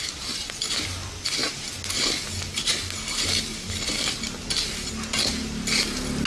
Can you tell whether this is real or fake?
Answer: real